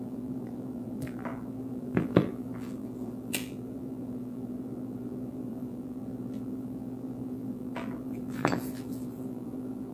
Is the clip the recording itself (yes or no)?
no